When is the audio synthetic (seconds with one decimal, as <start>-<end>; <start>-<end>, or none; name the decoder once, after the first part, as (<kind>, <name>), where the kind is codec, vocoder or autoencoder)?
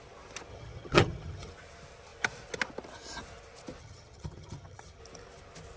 0.5-1.5 (vocoder, HiFi-GAN); 3.8-5.0